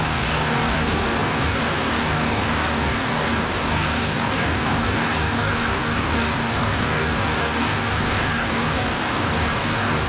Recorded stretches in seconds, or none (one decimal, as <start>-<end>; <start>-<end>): none